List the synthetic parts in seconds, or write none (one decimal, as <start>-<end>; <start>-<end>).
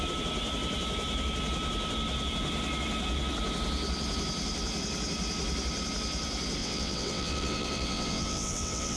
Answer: 6.6-9.0